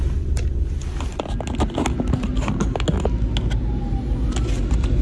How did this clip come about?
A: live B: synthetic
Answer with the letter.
A